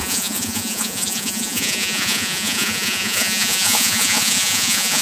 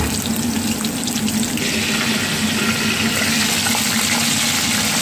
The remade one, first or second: first